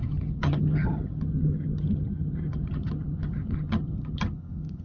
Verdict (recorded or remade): remade